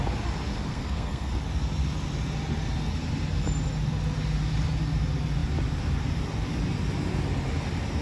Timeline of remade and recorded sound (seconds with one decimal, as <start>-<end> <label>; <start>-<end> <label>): 0.0-0.7 recorded; 0.7-1.4 remade; 1.4-8.0 recorded